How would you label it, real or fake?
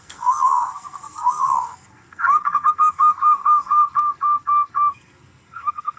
fake